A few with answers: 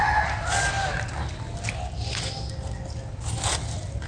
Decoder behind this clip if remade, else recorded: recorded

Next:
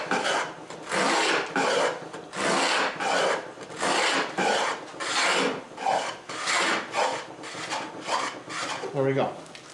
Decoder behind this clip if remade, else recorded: recorded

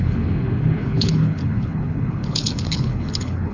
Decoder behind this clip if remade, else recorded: remade, codec, HILCodec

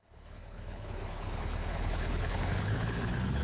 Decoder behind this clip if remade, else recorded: remade, codec, HILCodec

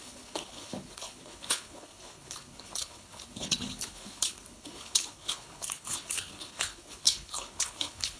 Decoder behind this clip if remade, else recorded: remade, codec, HILCodec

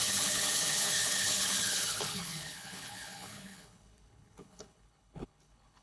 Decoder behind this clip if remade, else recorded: remade, codec, HILCodec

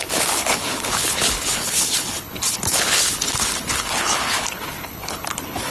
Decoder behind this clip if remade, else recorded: remade, codec, HILCodec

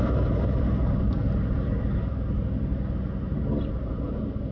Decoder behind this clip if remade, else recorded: recorded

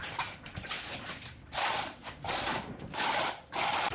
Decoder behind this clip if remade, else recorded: recorded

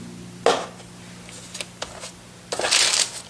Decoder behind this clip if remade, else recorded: recorded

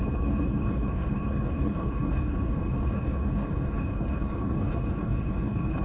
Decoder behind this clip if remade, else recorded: remade, codec, HILCodec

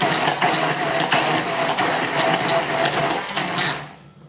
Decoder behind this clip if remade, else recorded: recorded